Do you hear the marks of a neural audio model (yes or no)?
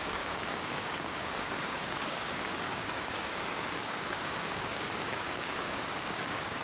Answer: yes